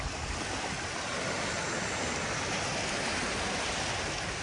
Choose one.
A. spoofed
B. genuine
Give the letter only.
B